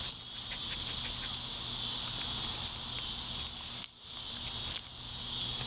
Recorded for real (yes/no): yes